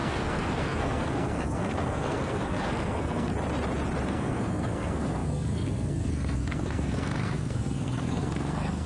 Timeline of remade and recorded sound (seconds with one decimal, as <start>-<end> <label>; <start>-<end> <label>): 0.0-3.3 remade; 3.3-4.1 recorded; 4.1-8.9 remade